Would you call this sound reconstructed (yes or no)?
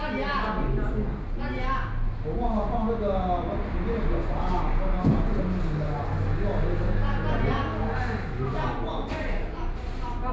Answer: no